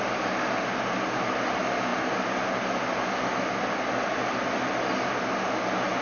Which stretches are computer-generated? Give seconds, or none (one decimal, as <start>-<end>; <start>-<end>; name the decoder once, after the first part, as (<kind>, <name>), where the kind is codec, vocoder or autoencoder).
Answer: none